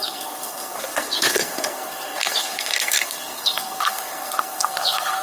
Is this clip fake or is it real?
fake